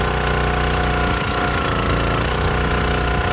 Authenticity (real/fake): real